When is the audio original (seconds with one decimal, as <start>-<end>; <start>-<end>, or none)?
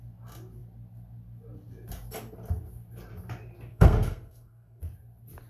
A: 0.0-3.7; 4.8-5.5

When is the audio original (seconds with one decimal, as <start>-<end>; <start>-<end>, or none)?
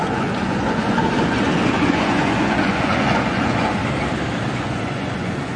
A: 3.8-4.5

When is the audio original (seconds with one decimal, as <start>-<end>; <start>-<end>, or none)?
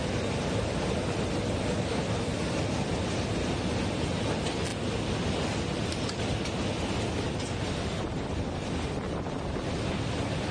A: 0.0-10.5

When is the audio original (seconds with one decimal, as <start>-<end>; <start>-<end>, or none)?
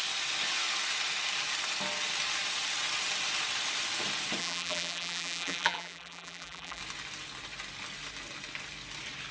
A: 0.0-4.4; 6.8-9.3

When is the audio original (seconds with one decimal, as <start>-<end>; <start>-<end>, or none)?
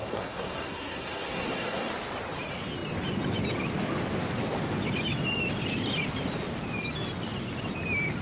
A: 1.9-8.2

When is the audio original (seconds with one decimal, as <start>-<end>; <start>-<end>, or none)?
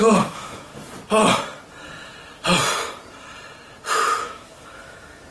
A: 0.7-3.9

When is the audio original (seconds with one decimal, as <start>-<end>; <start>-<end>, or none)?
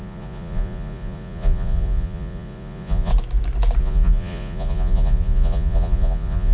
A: 3.1-3.8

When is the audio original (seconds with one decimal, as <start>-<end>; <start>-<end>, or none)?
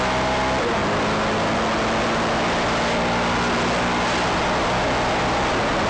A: 0.0-5.9